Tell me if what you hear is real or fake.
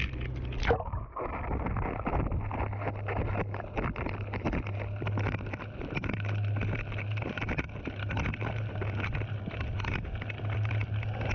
real